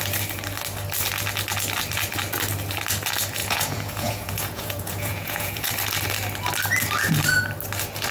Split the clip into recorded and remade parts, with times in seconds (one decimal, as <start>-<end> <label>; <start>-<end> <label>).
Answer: 0.0-3.4 recorded; 3.4-5.7 remade; 5.7-8.1 recorded